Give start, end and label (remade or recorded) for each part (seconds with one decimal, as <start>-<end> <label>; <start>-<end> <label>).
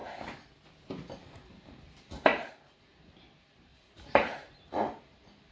0.0-2.3 recorded; 2.3-2.8 remade; 2.8-3.7 recorded; 3.7-4.7 remade; 4.7-5.5 recorded